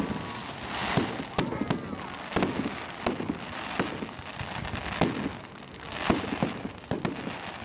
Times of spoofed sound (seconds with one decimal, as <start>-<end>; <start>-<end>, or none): none